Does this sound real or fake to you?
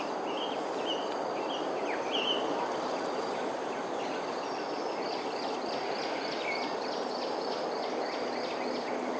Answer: real